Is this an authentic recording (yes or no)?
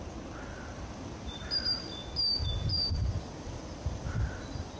yes